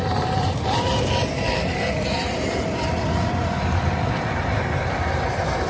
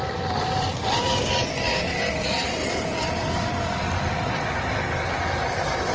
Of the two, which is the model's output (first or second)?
first